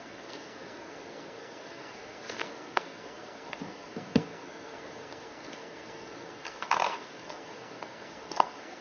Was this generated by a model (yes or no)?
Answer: yes